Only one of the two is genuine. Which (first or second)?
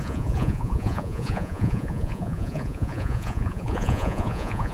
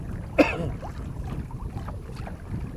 second